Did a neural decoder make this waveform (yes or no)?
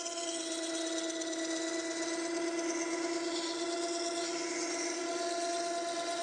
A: no